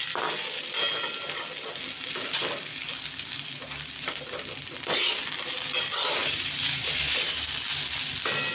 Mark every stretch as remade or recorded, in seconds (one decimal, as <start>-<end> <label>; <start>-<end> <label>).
0.0-6.2 recorded; 6.2-7.5 remade; 7.5-8.5 recorded